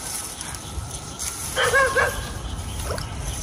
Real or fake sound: real